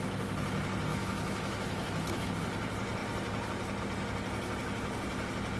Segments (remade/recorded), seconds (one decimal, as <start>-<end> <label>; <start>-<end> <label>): 0.0-0.9 recorded; 0.9-2.3 remade; 2.3-5.6 recorded

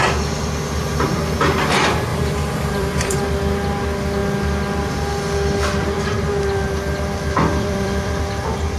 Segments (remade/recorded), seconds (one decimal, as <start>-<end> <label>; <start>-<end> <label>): 0.0-2.1 recorded; 2.1-3.2 remade; 3.2-7.5 recorded; 7.5-8.2 remade; 8.2-8.8 recorded

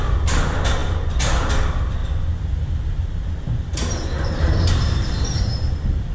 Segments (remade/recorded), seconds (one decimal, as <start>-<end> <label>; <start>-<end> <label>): 0.0-2.0 recorded; 2.0-6.1 remade

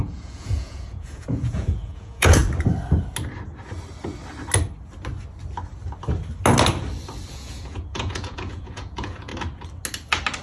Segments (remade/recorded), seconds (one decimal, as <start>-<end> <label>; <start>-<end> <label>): 0.0-2.4 remade; 2.4-7.3 recorded; 7.3-9.3 remade; 9.3-10.4 recorded

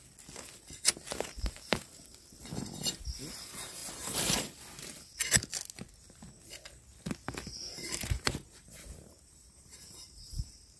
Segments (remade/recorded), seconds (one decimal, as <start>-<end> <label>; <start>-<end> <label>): 0.0-1.1 recorded; 1.1-2.2 remade; 2.2-7.7 recorded; 7.7-10.8 remade

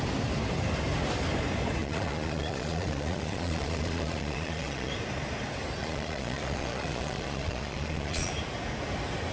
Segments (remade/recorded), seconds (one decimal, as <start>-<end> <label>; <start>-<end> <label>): 0.0-1.8 recorded; 1.8-4.9 remade; 4.9-5.8 recorded; 5.8-8.3 remade; 8.3-9.3 recorded

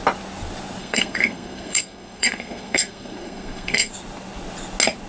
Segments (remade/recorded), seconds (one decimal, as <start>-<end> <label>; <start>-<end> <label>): 0.0-0.8 recorded; 0.8-3.9 remade; 3.9-5.1 recorded